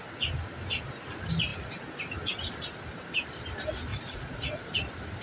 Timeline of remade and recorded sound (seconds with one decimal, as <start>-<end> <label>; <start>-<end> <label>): 0.0-3.9 recorded; 3.9-4.6 remade; 4.6-5.2 recorded